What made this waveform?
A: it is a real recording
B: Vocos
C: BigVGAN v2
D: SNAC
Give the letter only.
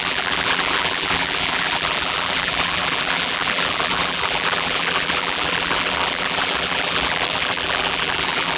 C